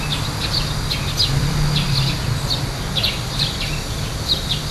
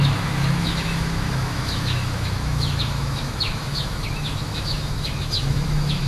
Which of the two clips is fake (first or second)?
second